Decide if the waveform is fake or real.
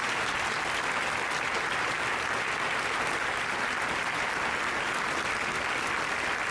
real